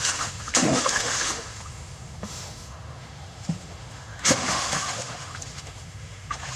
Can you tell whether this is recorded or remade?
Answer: remade